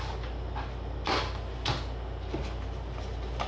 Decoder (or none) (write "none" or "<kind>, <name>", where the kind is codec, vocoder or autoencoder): none